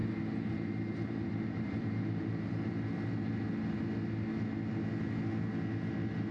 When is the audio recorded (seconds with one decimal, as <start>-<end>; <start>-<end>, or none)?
3.8-6.3